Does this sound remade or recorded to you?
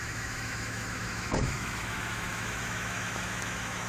remade